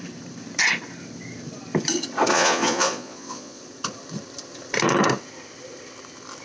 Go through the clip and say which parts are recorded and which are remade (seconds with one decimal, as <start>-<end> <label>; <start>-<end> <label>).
0.0-2.3 recorded; 2.3-3.6 remade; 3.6-6.4 recorded